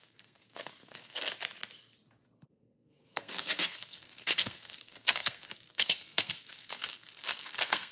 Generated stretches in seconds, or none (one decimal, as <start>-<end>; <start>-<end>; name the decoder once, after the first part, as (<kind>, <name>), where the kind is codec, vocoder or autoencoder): 0.0-1.3 (codec, SNAC); 2.5-7.9

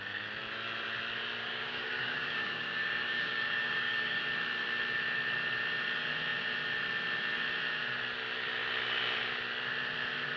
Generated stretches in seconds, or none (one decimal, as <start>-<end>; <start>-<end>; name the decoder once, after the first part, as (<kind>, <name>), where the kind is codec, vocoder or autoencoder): 1.4-4.2 (codec, DAC)

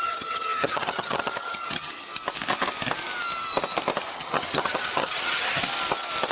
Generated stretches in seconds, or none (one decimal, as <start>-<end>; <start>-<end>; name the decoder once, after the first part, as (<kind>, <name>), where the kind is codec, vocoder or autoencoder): 0.0-2.1 (vocoder, HiFi-GAN); 4.1-5.6

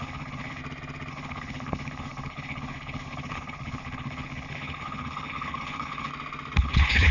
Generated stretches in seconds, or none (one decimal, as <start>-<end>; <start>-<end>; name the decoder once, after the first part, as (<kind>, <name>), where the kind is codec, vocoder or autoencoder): 0.0-0.6 (codec, HILCodec); 1.1-6.1; 6.6-7.1

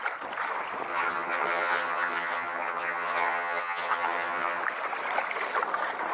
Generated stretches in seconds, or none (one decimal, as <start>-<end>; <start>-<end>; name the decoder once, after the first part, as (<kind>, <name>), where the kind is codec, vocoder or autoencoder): 0.9-4.6 (vocoder, HiFi-GAN)

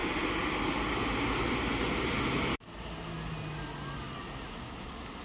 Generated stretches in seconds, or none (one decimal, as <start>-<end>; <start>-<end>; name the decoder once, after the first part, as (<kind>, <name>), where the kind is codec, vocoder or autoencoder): none